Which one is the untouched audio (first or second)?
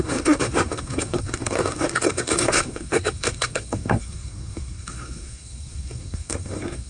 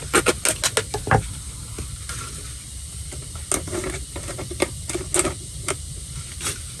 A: second